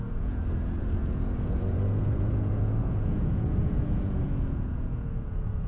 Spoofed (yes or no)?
yes